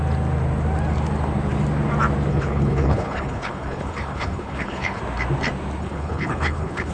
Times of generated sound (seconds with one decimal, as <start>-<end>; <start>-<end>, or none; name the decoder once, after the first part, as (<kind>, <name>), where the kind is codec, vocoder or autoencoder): 2.3-5.0 (codec, HILCodec); 5.8-6.9

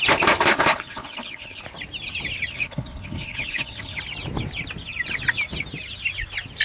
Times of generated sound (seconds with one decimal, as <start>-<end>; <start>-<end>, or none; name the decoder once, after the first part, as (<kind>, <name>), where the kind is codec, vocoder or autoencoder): 0.5-1.6 (codec, HILCodec); 2.5-4.0